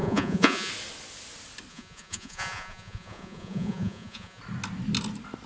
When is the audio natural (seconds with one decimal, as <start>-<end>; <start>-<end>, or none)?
0.7-1.7; 4.4-5.5